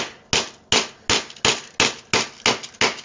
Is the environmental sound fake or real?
real